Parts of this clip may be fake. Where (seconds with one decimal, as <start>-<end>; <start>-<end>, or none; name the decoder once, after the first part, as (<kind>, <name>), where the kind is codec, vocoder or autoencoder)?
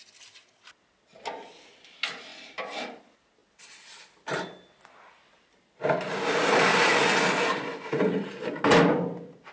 none